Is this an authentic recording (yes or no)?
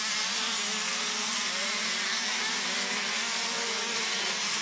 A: yes